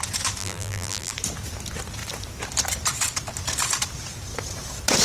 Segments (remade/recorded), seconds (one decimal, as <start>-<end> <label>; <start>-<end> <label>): 0.0-0.4 recorded; 0.4-1.1 remade; 1.1-5.0 recorded